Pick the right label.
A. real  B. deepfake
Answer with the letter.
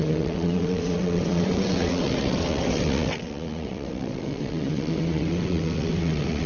B